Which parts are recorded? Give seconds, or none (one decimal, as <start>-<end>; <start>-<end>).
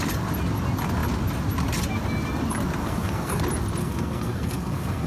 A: 0.0-2.8; 3.4-3.8